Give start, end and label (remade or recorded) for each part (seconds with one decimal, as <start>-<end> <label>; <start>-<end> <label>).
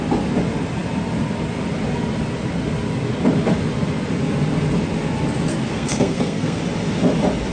0.0-5.5 recorded; 5.5-6.6 remade; 6.6-7.5 recorded